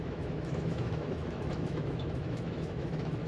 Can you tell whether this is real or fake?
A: fake